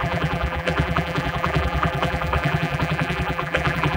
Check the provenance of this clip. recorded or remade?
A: remade